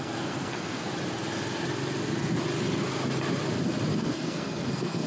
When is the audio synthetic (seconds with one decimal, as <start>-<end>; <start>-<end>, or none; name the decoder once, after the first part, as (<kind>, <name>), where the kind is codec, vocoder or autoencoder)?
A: 0.0-0.9 (codec, SNAC); 4.0-5.1